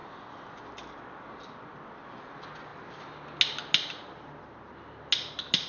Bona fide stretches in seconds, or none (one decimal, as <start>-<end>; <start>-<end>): 0.0-5.7